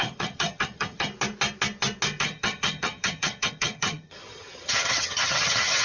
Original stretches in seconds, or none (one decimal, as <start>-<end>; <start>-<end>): 1.1-2.2